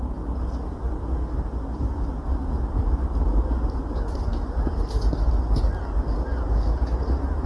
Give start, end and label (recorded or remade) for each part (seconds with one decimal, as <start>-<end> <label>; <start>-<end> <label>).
0.0-7.5 recorded